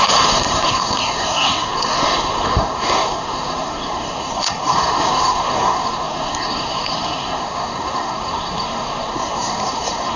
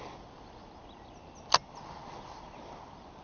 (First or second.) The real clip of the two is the second